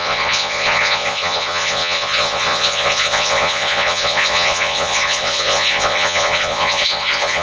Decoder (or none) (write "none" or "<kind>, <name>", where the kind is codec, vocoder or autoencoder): vocoder, Vocos